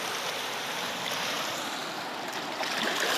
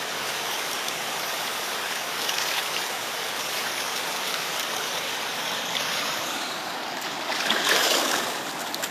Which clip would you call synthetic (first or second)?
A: second